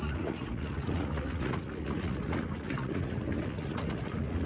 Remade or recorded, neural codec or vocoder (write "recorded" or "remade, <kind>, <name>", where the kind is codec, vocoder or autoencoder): remade, vocoder, Vocos